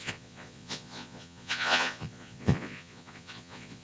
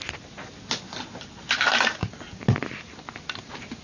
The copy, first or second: first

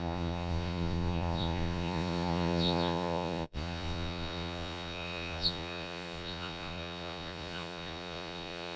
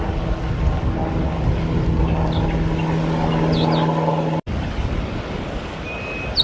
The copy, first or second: first